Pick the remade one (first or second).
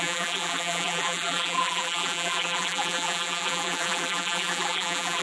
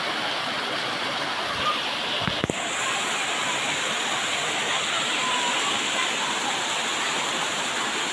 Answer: first